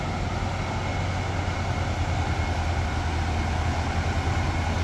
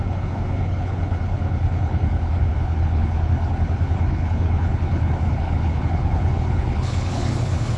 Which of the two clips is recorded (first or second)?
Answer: first